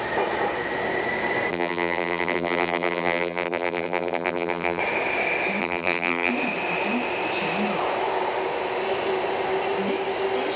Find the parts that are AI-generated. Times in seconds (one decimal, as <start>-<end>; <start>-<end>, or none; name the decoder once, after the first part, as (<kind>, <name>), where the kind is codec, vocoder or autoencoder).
1.5-4.8 (vocoder, BigVGAN v2); 5.6-6.3

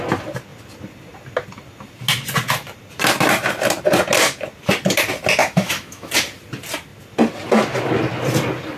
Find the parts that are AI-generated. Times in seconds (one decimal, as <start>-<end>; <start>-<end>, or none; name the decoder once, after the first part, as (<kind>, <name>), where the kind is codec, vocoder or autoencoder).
5.4-6.1 (autoencoder, DAC-VAE)

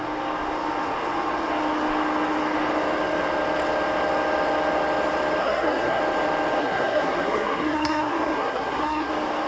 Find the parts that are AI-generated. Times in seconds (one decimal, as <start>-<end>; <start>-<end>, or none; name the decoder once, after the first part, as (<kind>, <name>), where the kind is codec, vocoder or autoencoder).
5.4-6.0 (codec, SNAC); 6.6-9.1

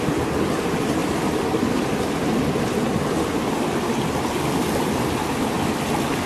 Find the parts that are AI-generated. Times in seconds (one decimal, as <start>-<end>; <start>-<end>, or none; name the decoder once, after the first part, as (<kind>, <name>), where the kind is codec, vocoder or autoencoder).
none

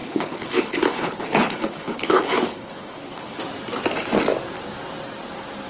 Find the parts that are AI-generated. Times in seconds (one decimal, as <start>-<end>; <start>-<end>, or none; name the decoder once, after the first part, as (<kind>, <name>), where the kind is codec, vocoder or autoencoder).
0.0-3.4 (codec, HILCodec)

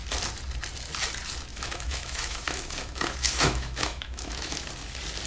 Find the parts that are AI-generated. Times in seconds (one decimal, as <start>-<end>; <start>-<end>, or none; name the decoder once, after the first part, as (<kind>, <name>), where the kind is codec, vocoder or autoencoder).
1.5-4.7 (autoencoder, DAC-VAE)